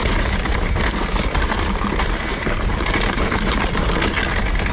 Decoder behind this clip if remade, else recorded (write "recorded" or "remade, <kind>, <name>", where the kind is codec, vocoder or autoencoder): recorded